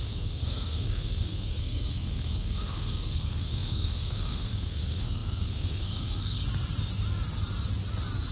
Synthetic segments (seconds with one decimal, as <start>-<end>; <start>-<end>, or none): 0.0-6.4